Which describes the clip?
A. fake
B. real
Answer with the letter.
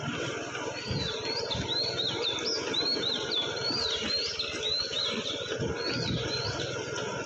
B